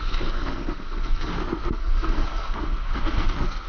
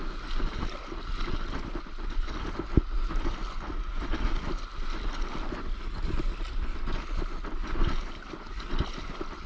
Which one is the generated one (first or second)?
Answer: first